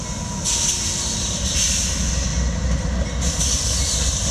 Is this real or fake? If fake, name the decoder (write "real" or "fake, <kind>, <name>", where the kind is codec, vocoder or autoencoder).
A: real